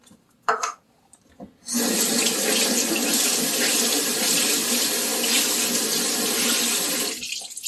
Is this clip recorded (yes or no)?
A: yes